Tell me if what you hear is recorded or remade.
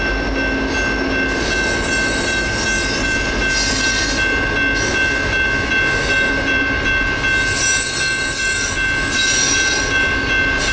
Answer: recorded